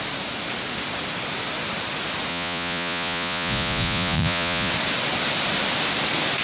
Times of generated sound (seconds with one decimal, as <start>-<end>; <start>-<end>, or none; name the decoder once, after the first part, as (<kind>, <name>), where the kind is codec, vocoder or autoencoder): 2.3-4.7 (vocoder, Vocos)